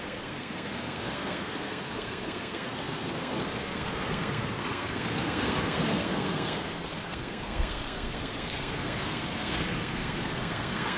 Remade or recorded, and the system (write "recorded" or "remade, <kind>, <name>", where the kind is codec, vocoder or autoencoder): remade, codec, SNAC